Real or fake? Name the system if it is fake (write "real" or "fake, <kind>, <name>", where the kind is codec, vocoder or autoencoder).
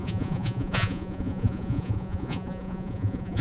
fake, vocoder, Vocos